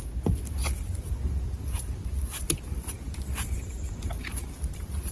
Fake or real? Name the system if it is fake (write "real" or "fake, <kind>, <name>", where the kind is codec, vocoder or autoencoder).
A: real